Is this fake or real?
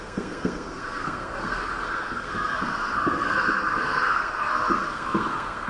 fake